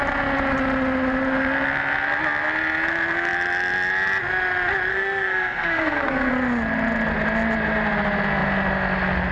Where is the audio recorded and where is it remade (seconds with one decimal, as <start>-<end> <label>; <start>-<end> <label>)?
0.0-4.9 recorded; 4.9-6.3 remade; 6.3-9.3 recorded